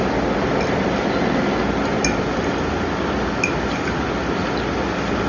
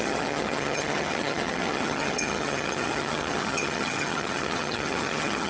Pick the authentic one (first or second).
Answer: first